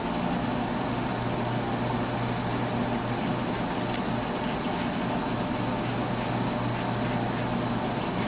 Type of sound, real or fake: real